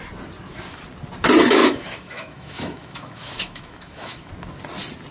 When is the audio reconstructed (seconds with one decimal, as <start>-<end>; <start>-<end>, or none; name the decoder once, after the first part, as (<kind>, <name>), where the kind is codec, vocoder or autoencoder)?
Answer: 1.6-4.3 (autoencoder, DAC-VAE)